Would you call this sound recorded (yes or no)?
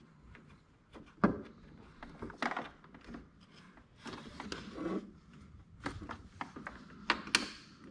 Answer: yes